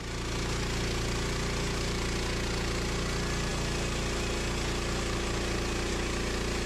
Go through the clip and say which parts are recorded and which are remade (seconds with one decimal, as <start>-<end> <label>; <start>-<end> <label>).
0.0-6.7 recorded